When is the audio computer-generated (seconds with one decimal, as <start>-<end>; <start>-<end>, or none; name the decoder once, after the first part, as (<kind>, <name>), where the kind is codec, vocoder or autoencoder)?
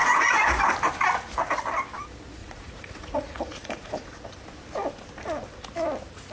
0.0-0.6 (vocoder, Vocos); 2.4-4.1